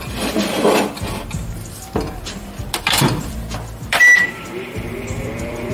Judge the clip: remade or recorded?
remade